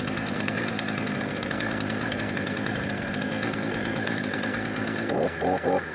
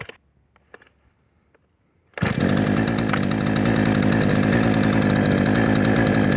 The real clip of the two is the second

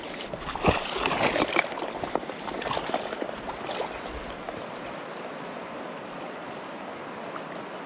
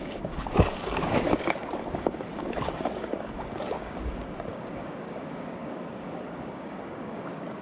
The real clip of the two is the first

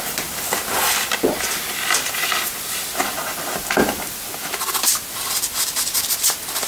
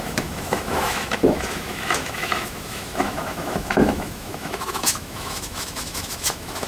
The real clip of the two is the first